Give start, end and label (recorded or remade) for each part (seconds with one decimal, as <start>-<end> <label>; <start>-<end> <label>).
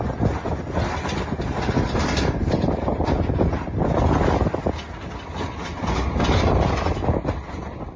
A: 0.0-8.0 recorded